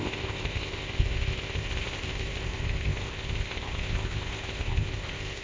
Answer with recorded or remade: remade